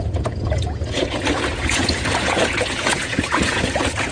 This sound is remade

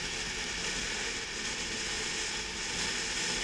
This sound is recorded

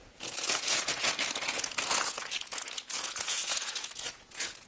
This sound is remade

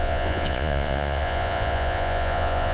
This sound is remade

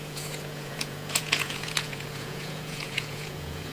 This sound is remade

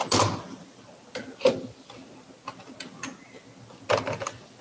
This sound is recorded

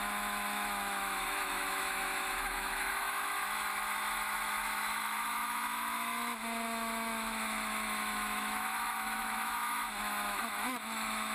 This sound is remade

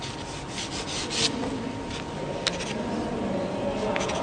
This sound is recorded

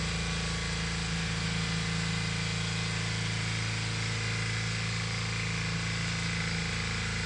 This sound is recorded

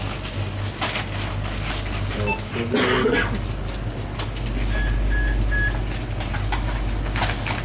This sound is recorded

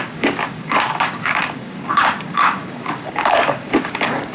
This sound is remade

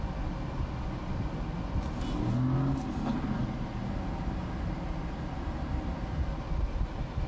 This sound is recorded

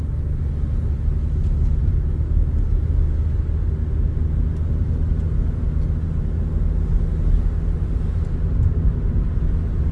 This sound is recorded